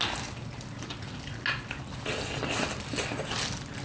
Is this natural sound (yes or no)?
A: yes